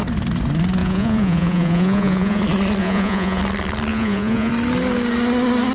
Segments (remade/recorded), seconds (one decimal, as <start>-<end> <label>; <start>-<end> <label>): 0.0-0.8 recorded; 0.8-2.4 remade; 2.4-2.8 recorded; 2.8-3.4 remade; 3.4-3.9 recorded; 3.9-4.5 remade; 4.5-5.7 recorded